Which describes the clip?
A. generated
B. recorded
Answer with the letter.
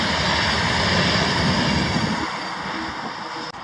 B